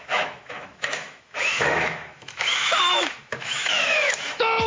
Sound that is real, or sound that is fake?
fake